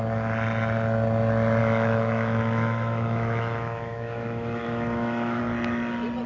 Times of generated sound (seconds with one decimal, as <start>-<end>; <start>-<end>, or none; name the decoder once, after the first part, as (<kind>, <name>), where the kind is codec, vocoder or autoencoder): 1.6-5.4 (autoencoder, DAC-VAE)